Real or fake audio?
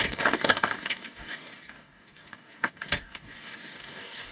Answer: fake